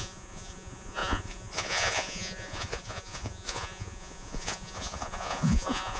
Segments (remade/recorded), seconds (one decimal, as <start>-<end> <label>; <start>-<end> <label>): 0.0-6.0 remade